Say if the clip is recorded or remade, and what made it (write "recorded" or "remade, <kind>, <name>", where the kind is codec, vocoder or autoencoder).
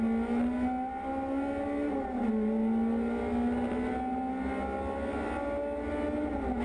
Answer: recorded